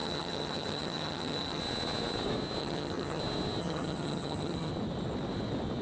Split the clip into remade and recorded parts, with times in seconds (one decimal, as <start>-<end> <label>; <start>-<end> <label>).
0.0-1.6 remade; 1.6-2.6 recorded; 2.6-3.2 remade; 3.2-3.6 recorded; 3.6-4.7 remade; 4.7-5.8 recorded